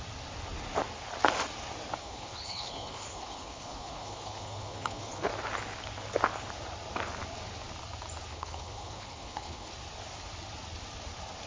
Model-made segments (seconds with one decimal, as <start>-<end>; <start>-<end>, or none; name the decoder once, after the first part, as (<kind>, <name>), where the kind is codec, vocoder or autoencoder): 2.0-5.3 (codec, HILCodec); 8.3-9.7